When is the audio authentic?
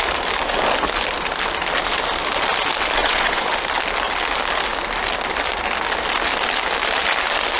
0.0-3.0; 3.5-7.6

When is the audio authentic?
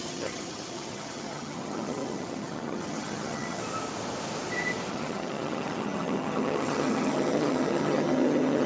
3.6-4.9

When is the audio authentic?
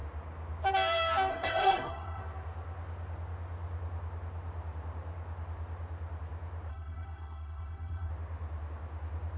0.0-1.3; 2.2-6.7; 8.1-9.4